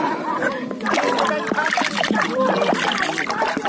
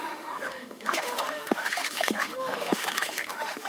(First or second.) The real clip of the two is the first